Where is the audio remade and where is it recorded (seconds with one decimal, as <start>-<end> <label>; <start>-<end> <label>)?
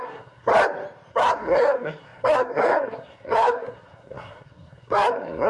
0.0-0.5 remade; 0.5-1.1 recorded; 1.1-5.5 remade